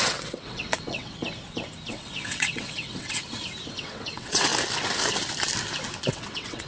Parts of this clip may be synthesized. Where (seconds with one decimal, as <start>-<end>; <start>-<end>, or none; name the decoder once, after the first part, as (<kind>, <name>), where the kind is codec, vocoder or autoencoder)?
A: 0.0-1.2 (vocoder, WaveNeXt); 1.9-3.2; 3.7-4.5; 6.1-6.7

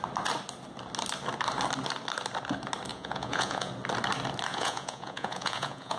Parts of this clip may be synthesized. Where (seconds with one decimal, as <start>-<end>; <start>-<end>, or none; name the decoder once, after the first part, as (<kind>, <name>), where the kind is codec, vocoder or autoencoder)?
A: 2.9-3.7 (vocoder, Vocos); 4.5-6.0